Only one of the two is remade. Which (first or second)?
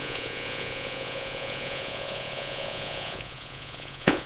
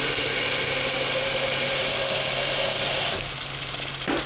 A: first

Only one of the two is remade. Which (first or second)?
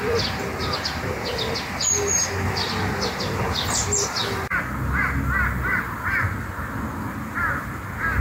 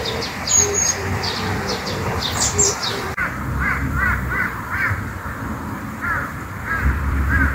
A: second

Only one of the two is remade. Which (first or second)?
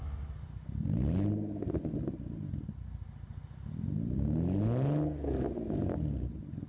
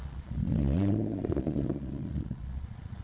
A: second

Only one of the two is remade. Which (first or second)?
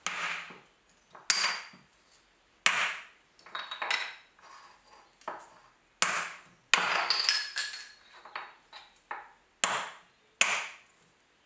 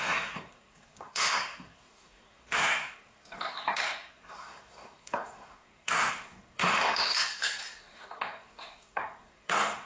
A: second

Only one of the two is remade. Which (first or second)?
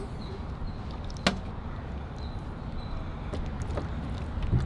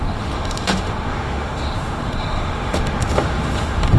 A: second